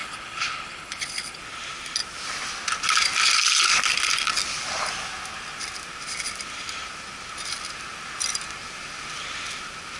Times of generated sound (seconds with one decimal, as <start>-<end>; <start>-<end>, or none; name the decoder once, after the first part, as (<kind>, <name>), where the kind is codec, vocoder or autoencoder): 0.0-1.4 (codec, HILCodec)